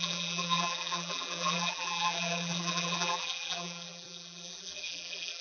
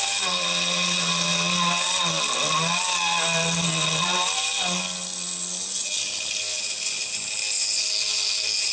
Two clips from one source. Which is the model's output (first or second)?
first